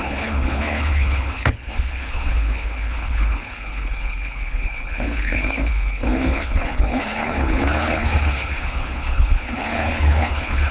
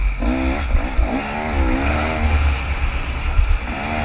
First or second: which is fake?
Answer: first